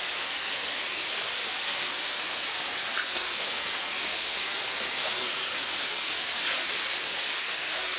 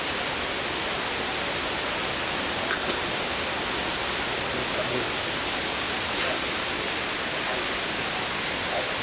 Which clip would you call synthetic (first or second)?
first